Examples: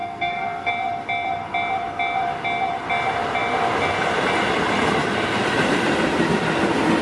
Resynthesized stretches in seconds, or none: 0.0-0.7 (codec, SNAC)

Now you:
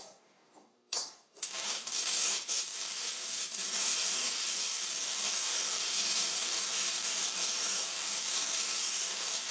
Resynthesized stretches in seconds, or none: 0.0-9.5 (codec, DAC)

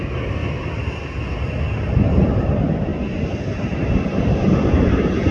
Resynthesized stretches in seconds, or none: 0.0-0.4 (vocoder, BigVGAN v2); 1.9-2.9; 3.4-5.3

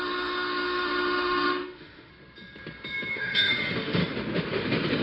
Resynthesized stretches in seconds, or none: 0.0-2.1 (autoencoder, DAC-VAE); 3.1-4.0